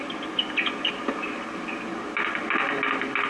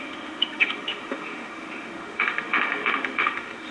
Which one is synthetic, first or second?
second